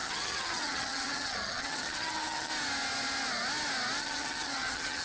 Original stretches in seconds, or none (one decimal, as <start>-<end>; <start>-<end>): 2.5-4.0